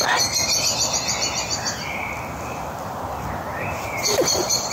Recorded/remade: recorded